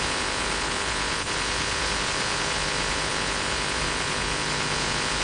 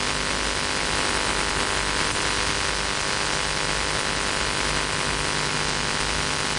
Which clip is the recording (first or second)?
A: second